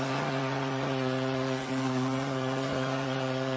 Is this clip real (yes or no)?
no